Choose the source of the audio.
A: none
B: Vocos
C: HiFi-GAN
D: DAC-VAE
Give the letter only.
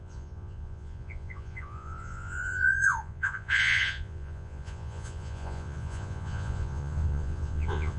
B